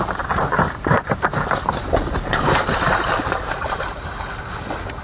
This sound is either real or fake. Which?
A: fake